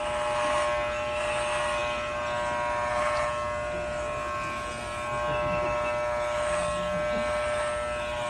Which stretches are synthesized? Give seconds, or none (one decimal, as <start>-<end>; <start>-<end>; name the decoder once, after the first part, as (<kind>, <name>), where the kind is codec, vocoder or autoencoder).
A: none

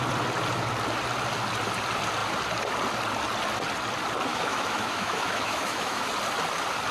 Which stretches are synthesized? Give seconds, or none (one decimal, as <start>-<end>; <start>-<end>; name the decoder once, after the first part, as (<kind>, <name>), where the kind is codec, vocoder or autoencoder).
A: 4.3-6.1 (autoencoder, DAC-VAE)

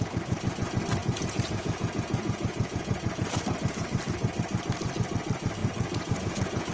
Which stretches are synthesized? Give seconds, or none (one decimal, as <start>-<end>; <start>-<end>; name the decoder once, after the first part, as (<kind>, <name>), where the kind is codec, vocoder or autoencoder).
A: 1.0-3.4 (vocoder, Vocos); 5.6-6.7

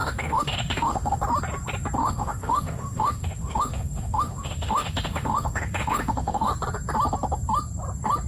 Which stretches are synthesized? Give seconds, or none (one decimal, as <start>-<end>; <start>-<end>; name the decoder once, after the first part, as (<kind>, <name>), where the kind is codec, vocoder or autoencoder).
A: 0.0-1.2 (autoencoder, DAC-VAE); 2.0-6.5